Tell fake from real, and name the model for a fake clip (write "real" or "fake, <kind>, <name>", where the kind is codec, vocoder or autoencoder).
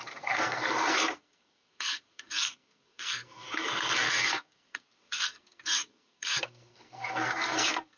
fake, codec, SNAC